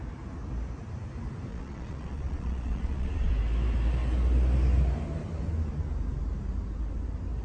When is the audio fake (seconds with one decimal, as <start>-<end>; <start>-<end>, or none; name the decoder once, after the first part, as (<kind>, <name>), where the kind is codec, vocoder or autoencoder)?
1.5-3.3 (vocoder, Vocos)